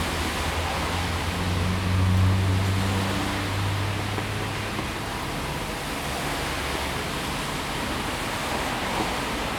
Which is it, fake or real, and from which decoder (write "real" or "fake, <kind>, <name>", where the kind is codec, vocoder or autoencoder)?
real